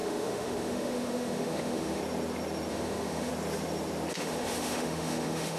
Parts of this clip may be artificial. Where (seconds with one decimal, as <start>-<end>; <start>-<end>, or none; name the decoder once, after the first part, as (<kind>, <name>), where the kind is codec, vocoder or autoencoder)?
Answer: 0.0-2.0 (autoencoder, DAC-VAE); 2.7-3.3; 4.1-5.6

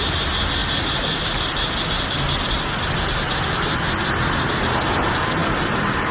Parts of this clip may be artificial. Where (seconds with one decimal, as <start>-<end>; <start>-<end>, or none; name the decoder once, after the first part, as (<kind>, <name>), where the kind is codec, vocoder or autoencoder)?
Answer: none

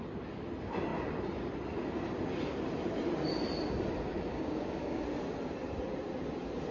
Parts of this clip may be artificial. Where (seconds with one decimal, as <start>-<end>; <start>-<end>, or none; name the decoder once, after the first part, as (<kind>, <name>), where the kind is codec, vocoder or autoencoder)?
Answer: 4.1-5.0 (codec, DAC)

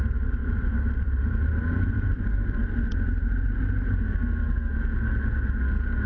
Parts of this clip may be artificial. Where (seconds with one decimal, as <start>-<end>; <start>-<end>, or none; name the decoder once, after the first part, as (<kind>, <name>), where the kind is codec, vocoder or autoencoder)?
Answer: 0.4-3.5 (vocoder, BigVGAN v2)

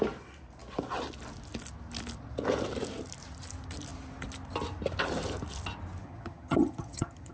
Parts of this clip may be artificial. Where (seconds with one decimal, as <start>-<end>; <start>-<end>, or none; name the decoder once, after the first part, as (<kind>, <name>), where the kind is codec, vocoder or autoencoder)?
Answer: 6.0-7.3 (vocoder, HiFi-GAN)

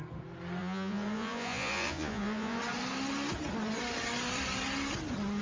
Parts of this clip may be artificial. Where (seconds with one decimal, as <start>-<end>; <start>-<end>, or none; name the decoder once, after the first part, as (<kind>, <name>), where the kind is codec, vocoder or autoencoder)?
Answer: 0.6-2.6 (vocoder, Vocos)

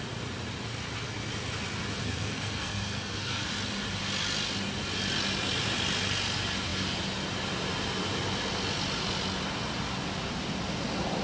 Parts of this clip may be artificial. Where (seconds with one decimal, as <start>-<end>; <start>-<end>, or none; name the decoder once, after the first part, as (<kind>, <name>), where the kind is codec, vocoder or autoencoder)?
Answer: 2.0-3.5 (codec, SNAC)

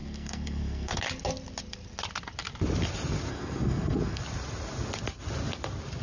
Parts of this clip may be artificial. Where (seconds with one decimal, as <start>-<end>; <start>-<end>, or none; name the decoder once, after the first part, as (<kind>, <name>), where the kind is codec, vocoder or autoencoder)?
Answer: 0.0-1.0 (codec, SNAC); 3.3-4.2